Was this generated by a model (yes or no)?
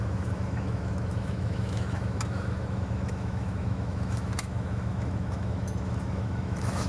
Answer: yes